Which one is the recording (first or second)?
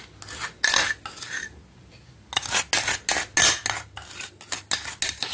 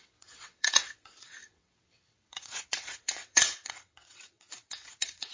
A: first